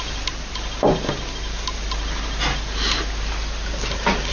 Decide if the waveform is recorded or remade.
recorded